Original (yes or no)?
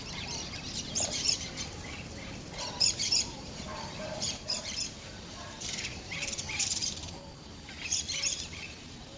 no